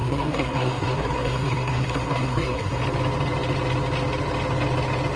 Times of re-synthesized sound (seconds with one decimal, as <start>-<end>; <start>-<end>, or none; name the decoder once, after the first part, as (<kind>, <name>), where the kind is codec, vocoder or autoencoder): 0.0-2.8 (codec, SNAC)